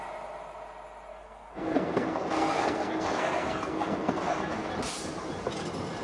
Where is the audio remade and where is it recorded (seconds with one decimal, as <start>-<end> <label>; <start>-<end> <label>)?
0.0-1.1 recorded; 1.1-4.7 remade; 4.7-6.0 recorded